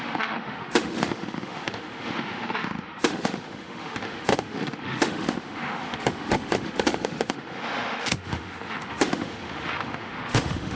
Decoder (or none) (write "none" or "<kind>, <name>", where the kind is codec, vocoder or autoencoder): autoencoder, DAC-VAE